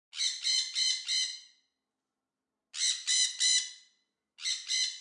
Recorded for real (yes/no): yes